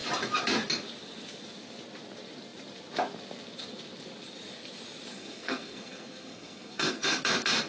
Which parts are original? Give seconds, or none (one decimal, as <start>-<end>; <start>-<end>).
0.0-5.1; 7.2-7.7